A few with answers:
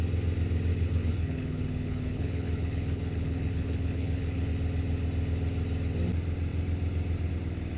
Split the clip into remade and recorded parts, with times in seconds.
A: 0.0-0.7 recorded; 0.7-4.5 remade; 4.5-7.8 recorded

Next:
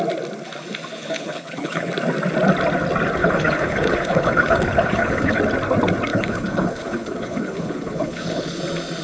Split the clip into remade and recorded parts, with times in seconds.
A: 0.0-1.0 recorded; 1.0-1.9 remade; 1.9-3.2 recorded; 3.2-5.4 remade; 5.4-6.1 recorded; 6.1-8.6 remade; 8.6-9.0 recorded

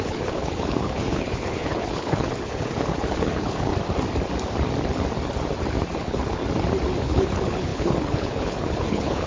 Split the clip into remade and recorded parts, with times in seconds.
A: 0.0-3.7 remade; 3.7-6.0 recorded; 6.0-6.4 remade; 6.4-7.0 recorded; 7.0-9.3 remade

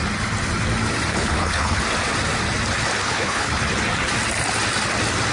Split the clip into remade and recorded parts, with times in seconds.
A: 0.0-1.1 recorded; 1.1-1.8 remade; 1.8-3.0 recorded; 3.0-3.6 remade; 3.6-5.3 recorded

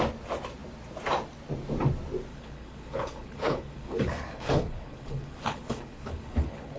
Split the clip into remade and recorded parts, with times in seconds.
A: 0.0-2.3 recorded; 2.3-6.8 remade

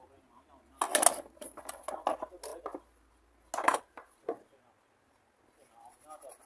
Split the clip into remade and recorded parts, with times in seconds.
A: 0.0-6.5 recorded

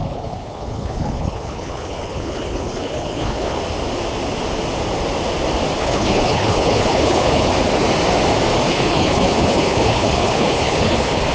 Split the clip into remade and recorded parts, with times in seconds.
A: 0.0-3.6 remade; 3.6-5.8 recorded; 5.8-7.5 remade; 7.5-8.7 recorded; 8.7-11.3 remade

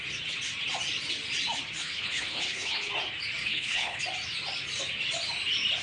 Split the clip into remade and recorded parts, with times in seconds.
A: 0.0-1.8 recorded; 1.8-2.9 remade; 2.9-3.4 recorded; 3.4-4.0 remade; 4.0-5.8 recorded